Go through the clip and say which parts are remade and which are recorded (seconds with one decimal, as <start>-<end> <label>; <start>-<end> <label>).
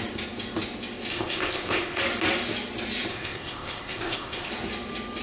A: 0.0-1.1 recorded; 1.1-2.0 remade; 2.0-3.1 recorded; 3.1-4.5 remade; 4.5-5.2 recorded